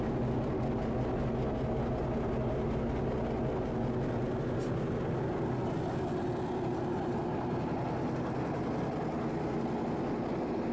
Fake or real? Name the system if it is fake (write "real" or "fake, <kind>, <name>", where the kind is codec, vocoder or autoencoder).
real